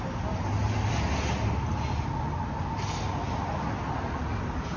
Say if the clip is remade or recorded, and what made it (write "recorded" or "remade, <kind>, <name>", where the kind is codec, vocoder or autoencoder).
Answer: recorded